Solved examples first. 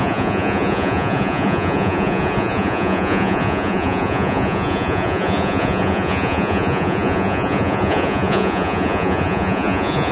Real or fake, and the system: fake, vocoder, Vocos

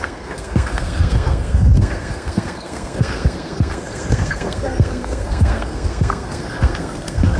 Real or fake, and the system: fake, codec, SNAC